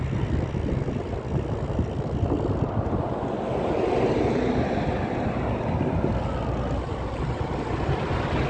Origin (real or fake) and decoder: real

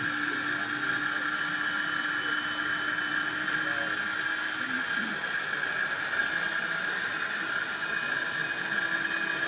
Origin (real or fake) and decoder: real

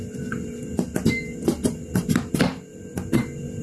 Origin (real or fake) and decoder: real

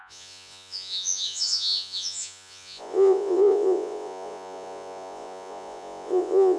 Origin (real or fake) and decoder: fake, vocoder, Vocos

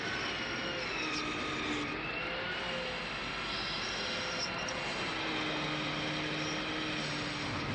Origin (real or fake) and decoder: real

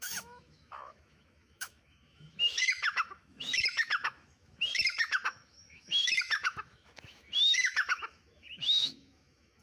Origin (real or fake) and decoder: fake, autoencoder, DAC-VAE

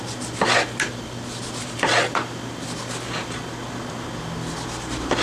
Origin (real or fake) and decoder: real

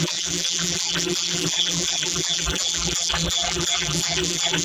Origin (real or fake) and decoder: fake, vocoder, BigVGAN v2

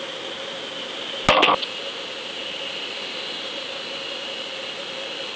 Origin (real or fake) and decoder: real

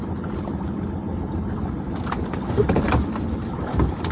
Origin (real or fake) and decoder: real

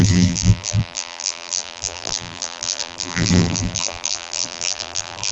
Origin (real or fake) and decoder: fake, vocoder, BigVGAN v2